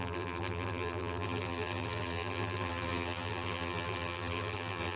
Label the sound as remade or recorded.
remade